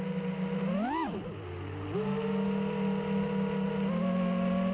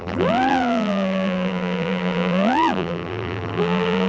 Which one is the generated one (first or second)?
second